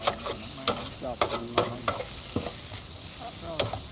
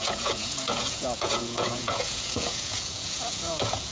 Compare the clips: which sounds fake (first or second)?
second